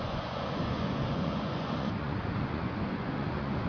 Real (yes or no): no